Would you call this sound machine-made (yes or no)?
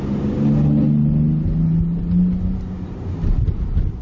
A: no